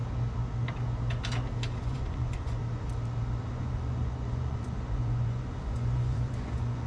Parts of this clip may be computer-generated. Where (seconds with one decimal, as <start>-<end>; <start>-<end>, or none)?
1.8-2.6; 3.5-6.9